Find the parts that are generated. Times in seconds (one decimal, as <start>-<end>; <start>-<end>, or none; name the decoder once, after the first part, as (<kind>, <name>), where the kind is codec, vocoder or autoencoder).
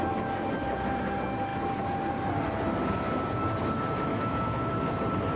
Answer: 4.1-4.7 (autoencoder, DAC-VAE)